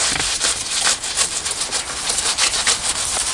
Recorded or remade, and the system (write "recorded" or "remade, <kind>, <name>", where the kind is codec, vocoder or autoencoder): remade, vocoder, BigVGAN v2